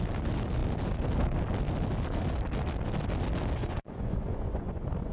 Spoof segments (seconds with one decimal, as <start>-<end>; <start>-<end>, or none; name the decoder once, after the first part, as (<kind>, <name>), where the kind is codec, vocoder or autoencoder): 3.6-5.1 (vocoder, Vocos)